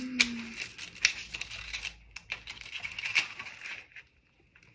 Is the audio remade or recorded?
recorded